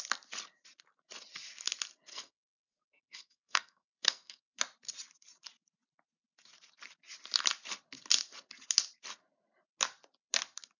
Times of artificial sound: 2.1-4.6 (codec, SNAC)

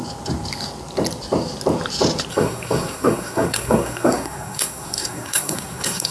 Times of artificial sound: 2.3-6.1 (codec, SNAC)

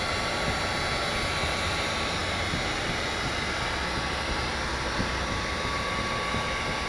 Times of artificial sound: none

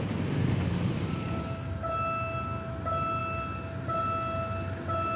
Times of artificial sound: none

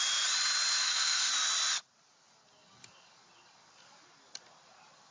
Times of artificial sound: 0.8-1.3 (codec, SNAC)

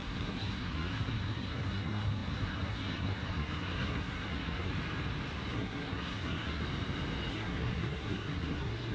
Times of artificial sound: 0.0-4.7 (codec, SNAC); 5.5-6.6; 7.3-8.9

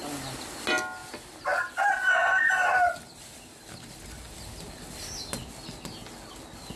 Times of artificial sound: none

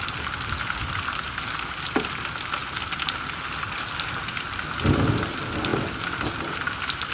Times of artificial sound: none